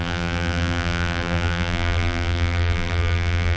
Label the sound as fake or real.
fake